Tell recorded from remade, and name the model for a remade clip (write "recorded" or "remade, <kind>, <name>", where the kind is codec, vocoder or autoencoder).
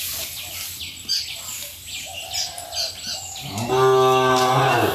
recorded